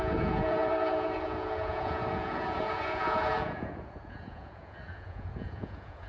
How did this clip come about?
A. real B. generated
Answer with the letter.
B